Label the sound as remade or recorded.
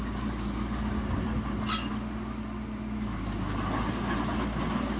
recorded